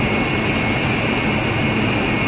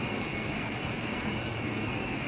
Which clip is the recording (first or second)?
first